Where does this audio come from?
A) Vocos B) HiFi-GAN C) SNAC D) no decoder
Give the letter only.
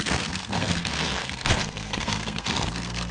C